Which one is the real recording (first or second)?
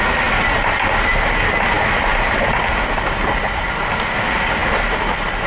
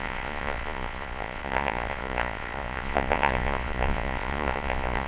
first